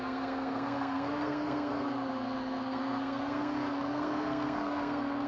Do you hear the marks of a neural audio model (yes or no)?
yes